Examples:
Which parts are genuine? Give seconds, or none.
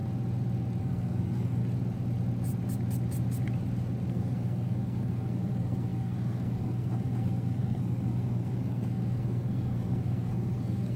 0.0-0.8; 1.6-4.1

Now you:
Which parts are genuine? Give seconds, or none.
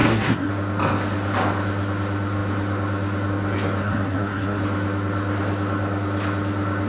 0.5-3.8; 4.6-6.9